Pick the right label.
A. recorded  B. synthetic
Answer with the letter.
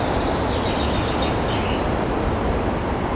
A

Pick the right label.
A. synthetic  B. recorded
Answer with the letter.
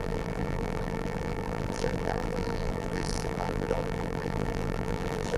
A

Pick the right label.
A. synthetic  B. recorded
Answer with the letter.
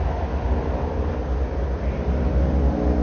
B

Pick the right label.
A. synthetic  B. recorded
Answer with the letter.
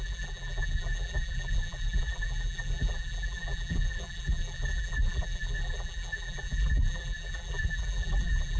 A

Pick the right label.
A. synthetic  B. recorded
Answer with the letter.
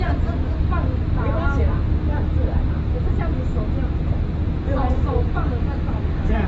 B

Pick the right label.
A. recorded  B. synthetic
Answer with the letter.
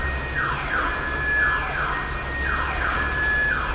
A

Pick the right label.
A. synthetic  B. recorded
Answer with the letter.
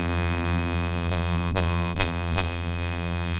A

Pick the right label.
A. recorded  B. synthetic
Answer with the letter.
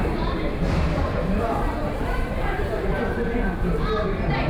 B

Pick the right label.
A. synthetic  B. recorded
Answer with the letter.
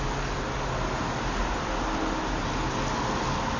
B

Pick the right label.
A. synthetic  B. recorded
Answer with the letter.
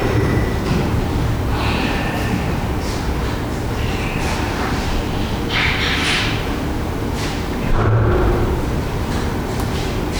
A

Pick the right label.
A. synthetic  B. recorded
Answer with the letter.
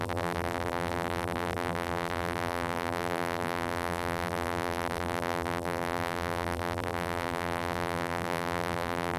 A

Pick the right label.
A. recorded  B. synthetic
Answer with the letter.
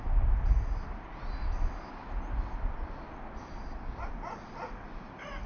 A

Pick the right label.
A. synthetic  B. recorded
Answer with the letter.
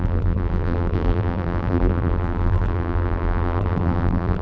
A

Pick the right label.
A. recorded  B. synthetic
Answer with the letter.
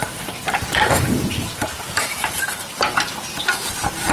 B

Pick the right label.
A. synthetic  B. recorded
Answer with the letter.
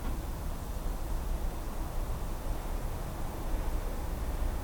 B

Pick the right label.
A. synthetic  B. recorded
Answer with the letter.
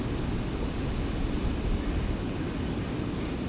B